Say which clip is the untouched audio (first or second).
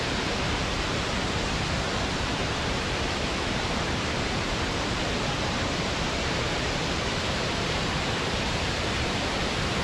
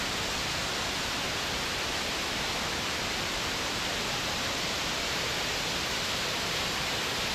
second